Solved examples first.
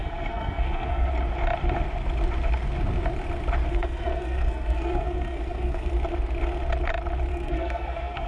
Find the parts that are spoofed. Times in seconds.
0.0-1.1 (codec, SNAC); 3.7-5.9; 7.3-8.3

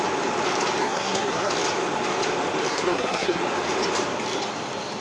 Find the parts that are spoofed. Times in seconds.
0.8-1.5 (codec, SNAC); 2.7-3.4